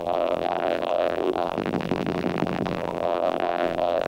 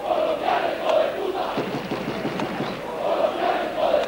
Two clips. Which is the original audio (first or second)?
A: second